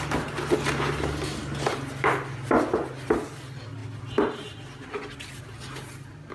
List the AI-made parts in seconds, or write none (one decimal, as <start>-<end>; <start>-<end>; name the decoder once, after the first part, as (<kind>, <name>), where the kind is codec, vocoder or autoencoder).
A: 3.8-5.4 (vocoder, BigVGAN v2)